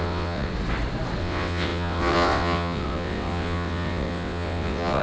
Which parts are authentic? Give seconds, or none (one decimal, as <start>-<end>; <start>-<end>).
0.5-1.2